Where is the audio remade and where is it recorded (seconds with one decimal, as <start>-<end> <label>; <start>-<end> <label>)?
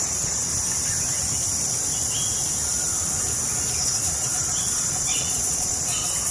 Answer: 0.0-0.5 remade; 0.5-3.8 recorded; 3.8-6.3 remade